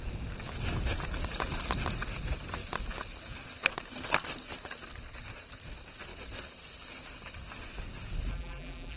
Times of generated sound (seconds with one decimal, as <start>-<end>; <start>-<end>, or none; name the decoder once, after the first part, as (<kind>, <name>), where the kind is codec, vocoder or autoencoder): 8.3-9.0 (vocoder, BigVGAN v2)